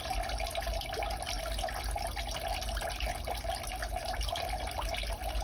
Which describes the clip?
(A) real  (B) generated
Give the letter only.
A